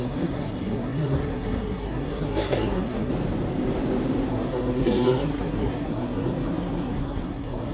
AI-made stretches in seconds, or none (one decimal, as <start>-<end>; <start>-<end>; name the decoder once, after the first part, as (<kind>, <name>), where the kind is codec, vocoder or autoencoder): 0.0-3.1 (codec, SNAC); 4.3-7.7